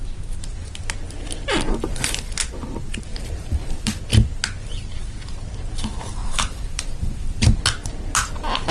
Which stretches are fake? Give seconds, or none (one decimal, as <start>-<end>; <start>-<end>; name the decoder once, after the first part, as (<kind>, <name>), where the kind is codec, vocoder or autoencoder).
3.1-4.0 (vocoder, BigVGAN v2); 6.2-7.6